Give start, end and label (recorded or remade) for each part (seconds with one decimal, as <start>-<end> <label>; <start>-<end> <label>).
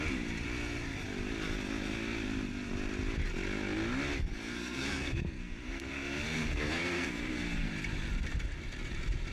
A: 0.0-4.5 recorded; 4.5-7.7 remade; 7.7-9.3 recorded